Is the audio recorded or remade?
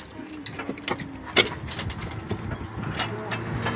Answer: recorded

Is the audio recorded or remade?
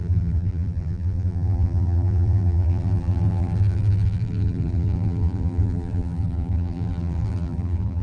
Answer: remade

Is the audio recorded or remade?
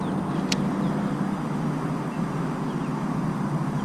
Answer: recorded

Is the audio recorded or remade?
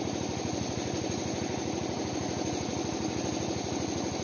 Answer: remade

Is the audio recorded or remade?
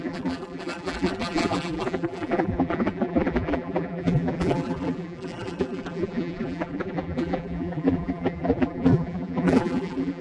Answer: remade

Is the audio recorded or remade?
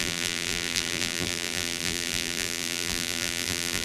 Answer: remade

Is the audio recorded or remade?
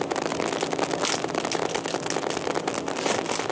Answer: recorded